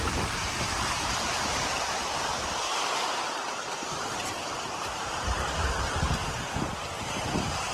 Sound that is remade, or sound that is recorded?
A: remade